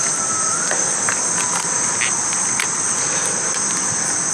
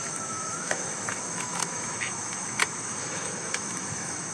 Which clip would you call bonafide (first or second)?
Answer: first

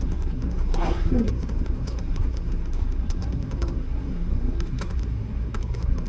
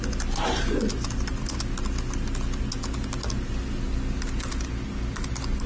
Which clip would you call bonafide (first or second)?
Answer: second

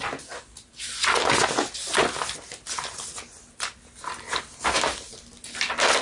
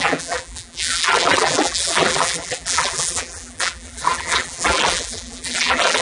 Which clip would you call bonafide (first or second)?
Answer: first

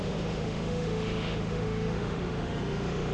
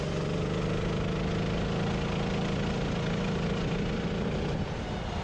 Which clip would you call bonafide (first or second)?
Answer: second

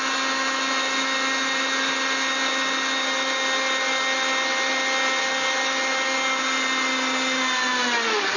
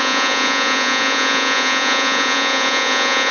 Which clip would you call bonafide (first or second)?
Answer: first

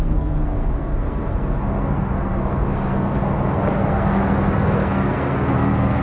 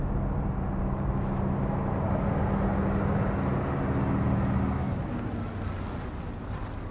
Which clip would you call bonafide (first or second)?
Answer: second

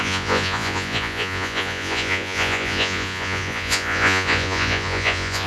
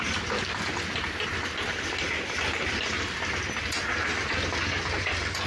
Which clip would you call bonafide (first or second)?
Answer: second